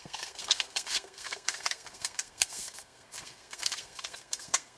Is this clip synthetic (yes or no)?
yes